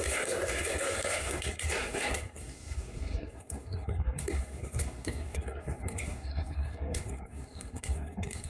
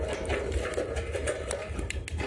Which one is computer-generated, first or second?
first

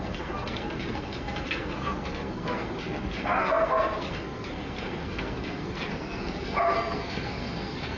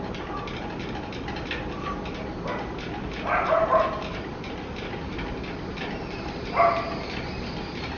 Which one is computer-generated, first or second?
first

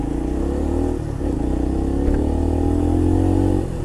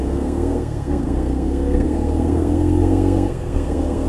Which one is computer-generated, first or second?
second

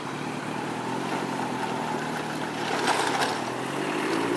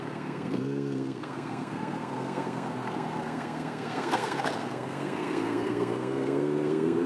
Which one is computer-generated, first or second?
second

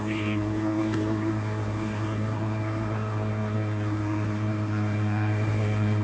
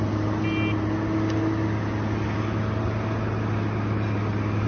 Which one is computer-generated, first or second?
first